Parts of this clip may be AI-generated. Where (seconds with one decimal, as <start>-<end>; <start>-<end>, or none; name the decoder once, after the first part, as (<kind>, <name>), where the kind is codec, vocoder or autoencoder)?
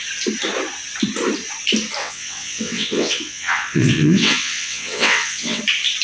2.0-5.6 (vocoder, WaveNeXt)